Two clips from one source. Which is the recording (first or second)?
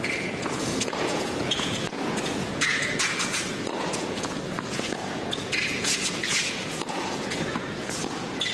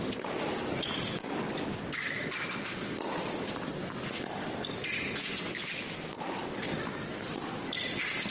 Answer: second